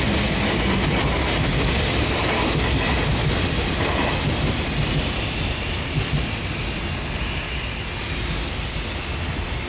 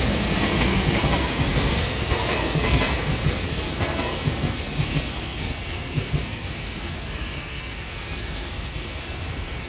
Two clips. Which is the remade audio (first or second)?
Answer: second